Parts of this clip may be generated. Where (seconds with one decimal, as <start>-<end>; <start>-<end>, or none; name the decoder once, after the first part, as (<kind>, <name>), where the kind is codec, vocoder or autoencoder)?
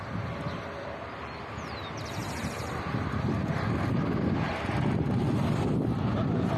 none